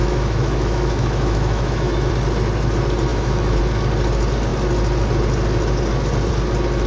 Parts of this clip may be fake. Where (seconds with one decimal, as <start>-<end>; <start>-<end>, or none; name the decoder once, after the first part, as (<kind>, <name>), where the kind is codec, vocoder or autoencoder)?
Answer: 0.0-2.1 (autoencoder, DAC-VAE); 3.1-3.6